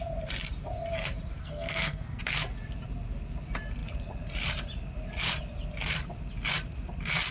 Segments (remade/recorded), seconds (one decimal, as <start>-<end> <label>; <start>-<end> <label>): 0.0-1.4 recorded; 1.4-2.2 remade; 2.2-7.3 recorded